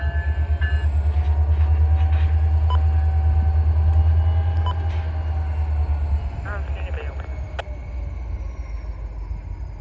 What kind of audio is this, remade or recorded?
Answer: recorded